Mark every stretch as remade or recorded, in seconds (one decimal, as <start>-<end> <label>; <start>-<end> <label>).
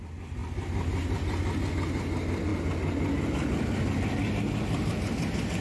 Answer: 0.0-5.6 recorded